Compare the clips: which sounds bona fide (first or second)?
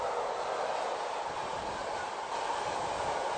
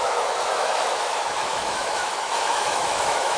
first